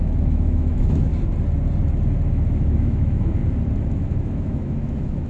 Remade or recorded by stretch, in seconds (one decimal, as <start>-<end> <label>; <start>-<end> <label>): 0.0-1.1 remade; 1.1-2.3 recorded; 2.3-3.4 remade; 3.4-3.9 recorded; 3.9-5.3 remade